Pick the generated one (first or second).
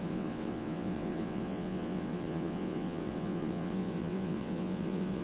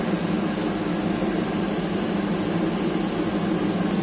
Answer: first